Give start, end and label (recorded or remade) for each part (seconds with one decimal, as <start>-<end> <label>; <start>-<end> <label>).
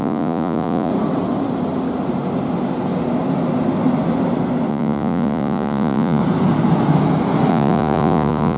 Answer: 0.0-0.9 remade; 0.9-4.7 recorded; 4.7-6.2 remade; 6.2-7.5 recorded; 7.5-8.6 remade